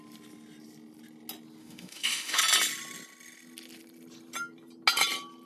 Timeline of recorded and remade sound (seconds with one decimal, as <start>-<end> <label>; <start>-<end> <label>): 0.0-1.6 recorded; 1.6-2.4 remade; 2.4-5.5 recorded